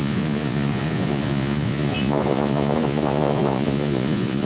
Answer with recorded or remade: remade